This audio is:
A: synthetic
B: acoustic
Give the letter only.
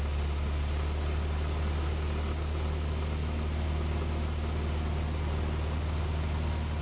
B